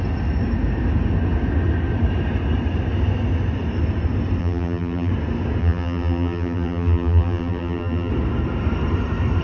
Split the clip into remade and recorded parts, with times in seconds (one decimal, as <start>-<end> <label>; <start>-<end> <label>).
0.0-4.4 recorded; 4.4-5.1 remade; 5.1-5.6 recorded; 5.6-8.1 remade; 8.1-9.4 recorded